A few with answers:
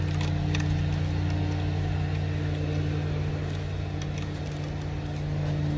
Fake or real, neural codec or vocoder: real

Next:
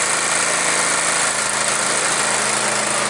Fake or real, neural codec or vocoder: real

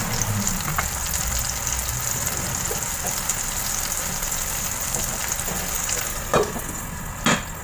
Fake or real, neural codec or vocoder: real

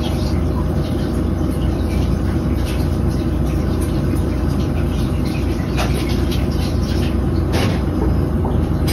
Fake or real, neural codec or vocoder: fake, vocoder, BigVGAN v2